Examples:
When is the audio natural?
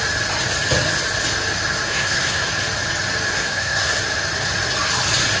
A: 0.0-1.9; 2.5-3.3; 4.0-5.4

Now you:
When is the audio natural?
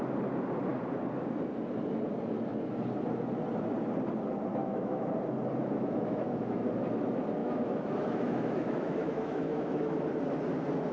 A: 0.0-4.5; 5.1-5.6; 6.7-7.4; 10.0-10.9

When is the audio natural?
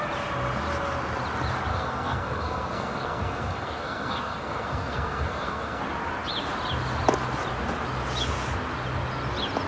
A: 0.0-1.7; 5.8-9.7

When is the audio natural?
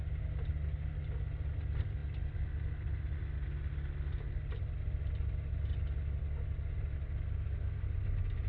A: 0.0-8.5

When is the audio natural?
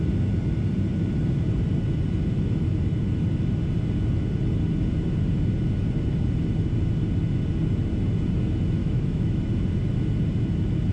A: 0.0-8.8; 9.4-10.9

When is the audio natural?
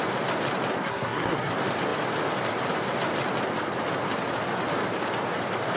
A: 0.0-0.8; 1.5-5.8